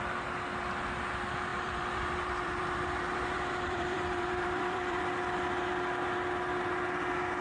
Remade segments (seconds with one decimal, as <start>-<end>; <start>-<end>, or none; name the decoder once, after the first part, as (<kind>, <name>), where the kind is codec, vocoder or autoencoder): 1.5-5.0 (vocoder, BigVGAN v2)